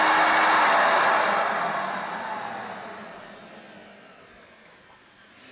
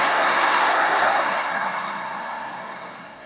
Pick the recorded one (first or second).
first